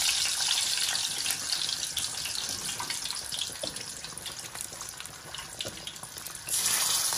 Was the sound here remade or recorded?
recorded